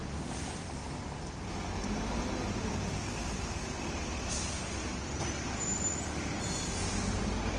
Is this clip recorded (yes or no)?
yes